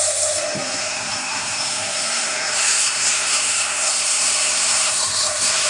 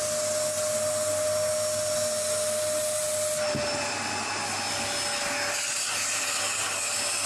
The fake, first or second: first